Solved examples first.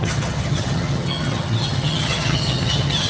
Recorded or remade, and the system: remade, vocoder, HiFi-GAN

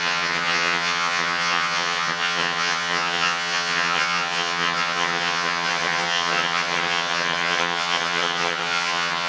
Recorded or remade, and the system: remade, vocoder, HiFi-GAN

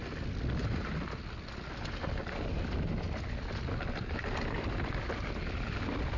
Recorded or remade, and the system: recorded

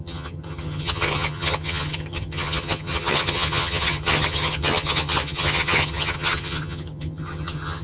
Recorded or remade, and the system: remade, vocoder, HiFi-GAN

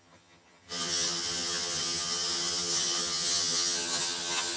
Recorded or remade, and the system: remade, vocoder, HiFi-GAN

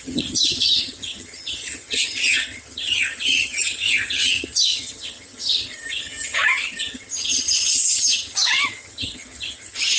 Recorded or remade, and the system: remade, vocoder, HiFi-GAN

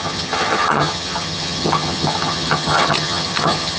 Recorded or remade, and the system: remade, vocoder, HiFi-GAN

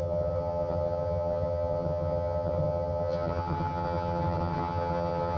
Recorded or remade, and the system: remade, vocoder, HiFi-GAN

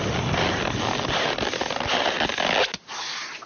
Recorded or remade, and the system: recorded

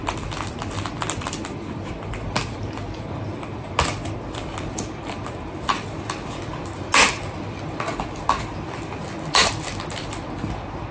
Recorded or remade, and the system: recorded